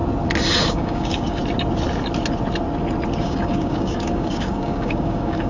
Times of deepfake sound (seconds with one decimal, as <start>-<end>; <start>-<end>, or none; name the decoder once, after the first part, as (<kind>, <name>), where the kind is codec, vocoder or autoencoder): 0.6-1.4 (codec, DAC); 3.2-5.5